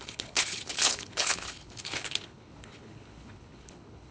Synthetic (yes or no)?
yes